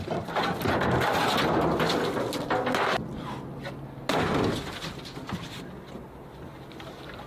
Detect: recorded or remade recorded